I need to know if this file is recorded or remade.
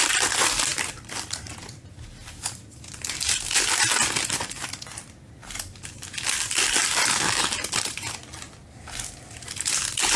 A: remade